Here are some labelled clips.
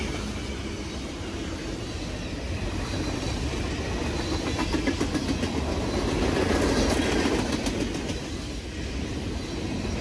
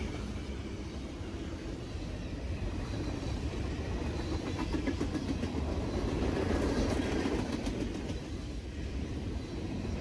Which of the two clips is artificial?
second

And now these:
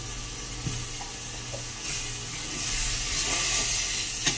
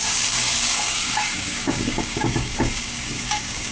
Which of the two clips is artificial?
second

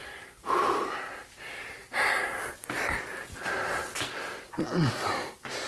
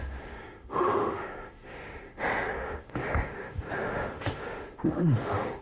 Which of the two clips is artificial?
second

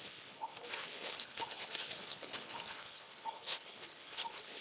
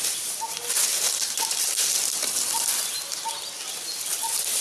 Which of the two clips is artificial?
first